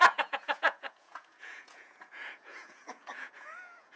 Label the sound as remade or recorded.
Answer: remade